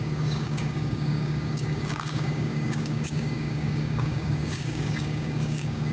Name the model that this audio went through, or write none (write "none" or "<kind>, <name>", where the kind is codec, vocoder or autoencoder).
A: codec, DAC